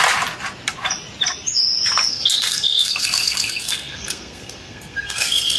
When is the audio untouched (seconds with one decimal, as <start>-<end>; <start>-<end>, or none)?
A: 0.0-2.1